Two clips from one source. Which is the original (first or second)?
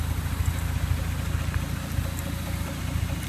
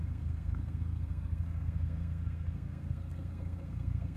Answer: first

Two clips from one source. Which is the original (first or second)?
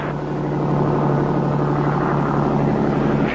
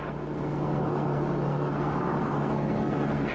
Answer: first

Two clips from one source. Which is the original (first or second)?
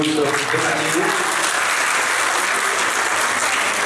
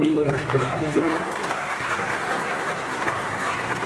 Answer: first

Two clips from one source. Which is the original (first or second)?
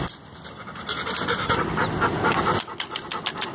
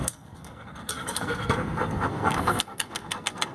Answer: first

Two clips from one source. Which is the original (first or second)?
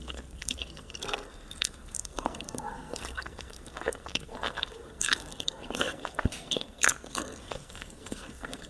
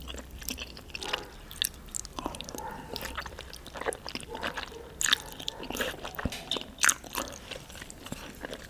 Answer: second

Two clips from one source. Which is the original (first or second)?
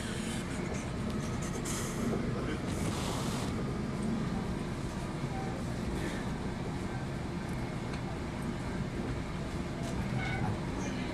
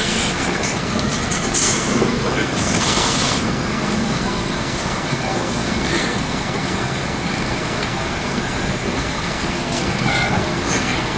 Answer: first